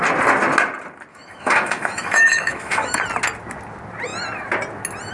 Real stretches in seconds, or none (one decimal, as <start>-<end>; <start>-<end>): 0.0-1.1; 3.0-5.1